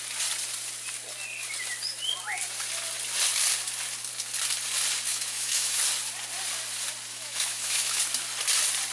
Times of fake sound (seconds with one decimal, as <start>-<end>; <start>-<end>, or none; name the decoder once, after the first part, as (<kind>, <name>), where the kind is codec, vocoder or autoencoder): 5.1-5.8 (autoencoder, DAC-VAE); 7.1-8.0